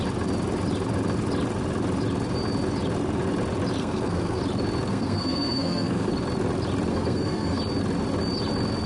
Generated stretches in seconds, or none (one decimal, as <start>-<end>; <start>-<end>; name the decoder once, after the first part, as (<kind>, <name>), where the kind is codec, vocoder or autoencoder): 3.8-4.4 (codec, SNAC); 4.9-6.1; 6.9-7.6